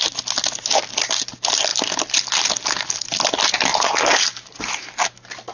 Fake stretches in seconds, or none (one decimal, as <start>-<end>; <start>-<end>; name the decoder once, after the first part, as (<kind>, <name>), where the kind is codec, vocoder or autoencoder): none

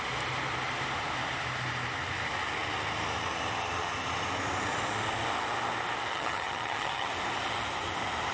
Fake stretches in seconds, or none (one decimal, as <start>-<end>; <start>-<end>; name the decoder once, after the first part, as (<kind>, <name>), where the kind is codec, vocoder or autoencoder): 6.1-7.1 (vocoder, HiFi-GAN)